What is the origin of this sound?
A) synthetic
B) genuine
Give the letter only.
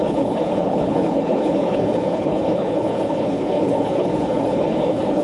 A